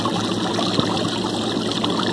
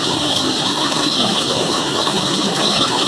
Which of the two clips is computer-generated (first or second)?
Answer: second